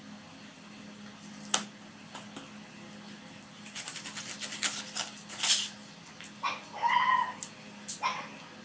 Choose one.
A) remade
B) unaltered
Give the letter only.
B